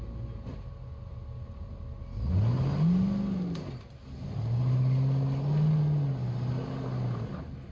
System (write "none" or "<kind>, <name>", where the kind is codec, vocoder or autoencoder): none